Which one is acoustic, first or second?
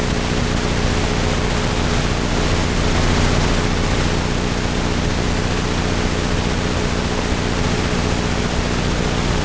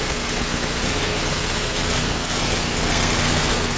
first